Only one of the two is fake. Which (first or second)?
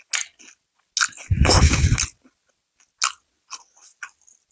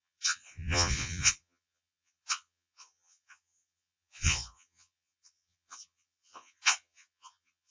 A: second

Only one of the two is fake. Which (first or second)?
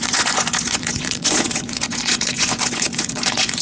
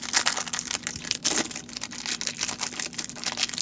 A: first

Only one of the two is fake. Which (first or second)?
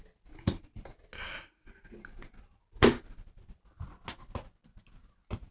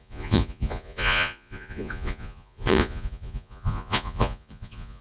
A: second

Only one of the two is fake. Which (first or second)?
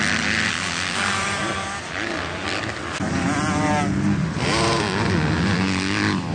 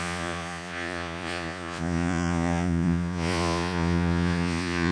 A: second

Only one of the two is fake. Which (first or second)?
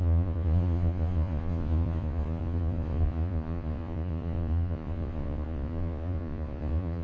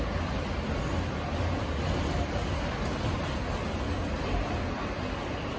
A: first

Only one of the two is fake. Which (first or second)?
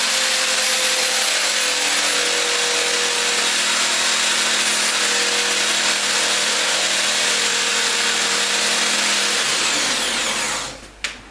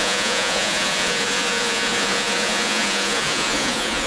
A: second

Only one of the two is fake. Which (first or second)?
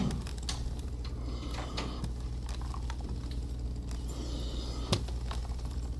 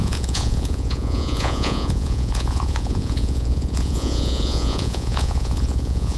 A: second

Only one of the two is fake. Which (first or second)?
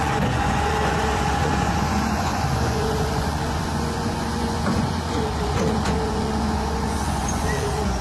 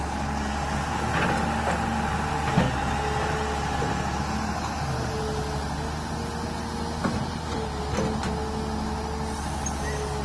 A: first